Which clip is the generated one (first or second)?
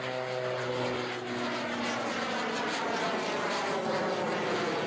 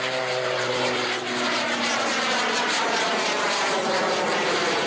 second